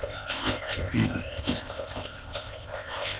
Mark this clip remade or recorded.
remade